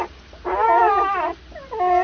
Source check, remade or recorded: recorded